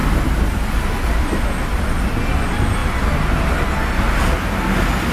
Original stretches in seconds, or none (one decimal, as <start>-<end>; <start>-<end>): 0.0-5.1